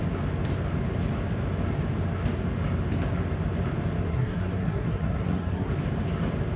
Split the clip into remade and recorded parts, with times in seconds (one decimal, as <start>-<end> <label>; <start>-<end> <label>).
0.0-4.1 recorded; 4.1-5.7 remade; 5.7-6.6 recorded